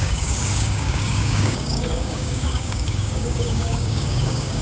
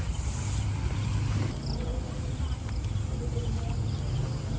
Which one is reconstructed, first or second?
first